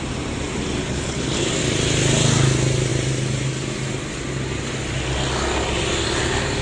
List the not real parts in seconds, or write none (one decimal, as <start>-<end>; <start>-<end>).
0.8-1.5